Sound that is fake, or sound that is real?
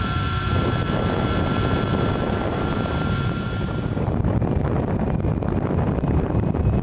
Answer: fake